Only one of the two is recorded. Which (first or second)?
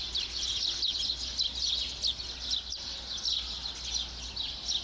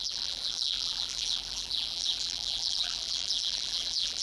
first